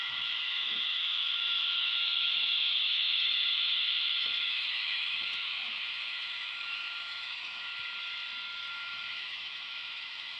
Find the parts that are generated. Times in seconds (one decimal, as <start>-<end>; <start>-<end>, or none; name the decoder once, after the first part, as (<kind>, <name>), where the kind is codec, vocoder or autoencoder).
0.0-7.7 (autoencoder, DAC-VAE); 8.7-10.4